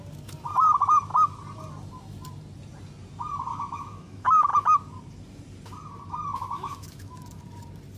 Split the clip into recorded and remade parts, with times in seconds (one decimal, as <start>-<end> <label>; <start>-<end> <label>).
0.0-3.5 recorded; 3.5-4.5 remade; 4.5-6.3 recorded; 6.3-7.4 remade; 7.4-8.0 recorded